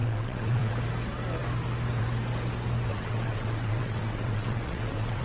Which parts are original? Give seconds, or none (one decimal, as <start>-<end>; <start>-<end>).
0.7-2.9